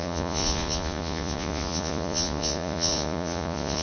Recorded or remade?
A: remade